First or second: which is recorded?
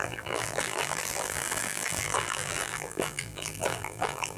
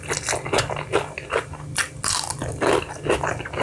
second